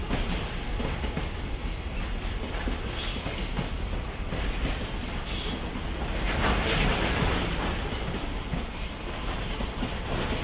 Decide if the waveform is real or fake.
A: real